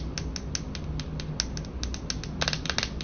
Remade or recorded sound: recorded